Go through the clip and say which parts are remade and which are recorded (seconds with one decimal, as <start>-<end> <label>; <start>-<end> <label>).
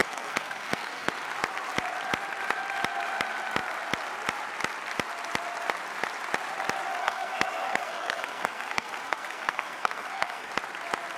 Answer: 0.0-1.1 remade; 1.1-7.0 recorded; 7.0-10.5 remade; 10.5-11.2 recorded